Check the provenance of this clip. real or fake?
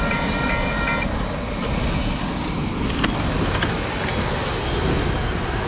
real